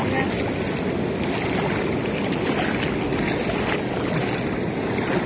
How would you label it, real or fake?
real